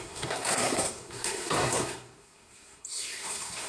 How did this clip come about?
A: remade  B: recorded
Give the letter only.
A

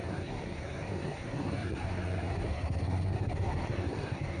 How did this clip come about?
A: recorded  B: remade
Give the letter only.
B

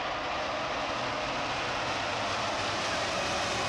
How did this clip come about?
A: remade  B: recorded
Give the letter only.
B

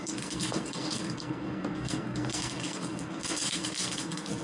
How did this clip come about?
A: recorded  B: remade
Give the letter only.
B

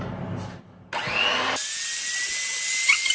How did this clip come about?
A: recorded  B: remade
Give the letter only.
A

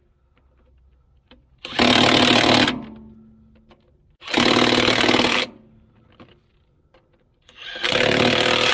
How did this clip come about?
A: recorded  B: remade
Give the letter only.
A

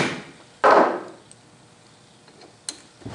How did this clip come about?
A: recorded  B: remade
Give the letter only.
A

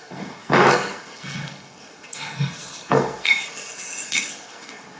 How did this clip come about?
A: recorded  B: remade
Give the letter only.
B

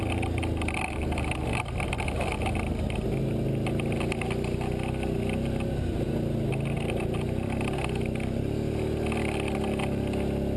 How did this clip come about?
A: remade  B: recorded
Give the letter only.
B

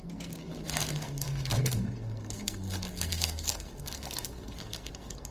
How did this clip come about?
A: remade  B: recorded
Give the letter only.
A